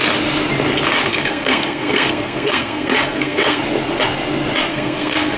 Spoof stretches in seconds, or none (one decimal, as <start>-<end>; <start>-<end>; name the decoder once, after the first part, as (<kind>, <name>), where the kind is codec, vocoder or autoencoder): 1.1-3.6 (codec, SNAC); 4.7-5.4